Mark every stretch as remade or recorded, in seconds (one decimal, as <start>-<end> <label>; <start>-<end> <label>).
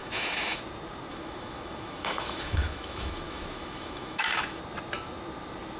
0.0-0.6 remade; 0.6-1.1 recorded; 1.1-4.6 remade; 4.6-5.8 recorded